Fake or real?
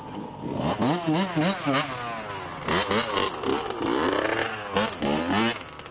real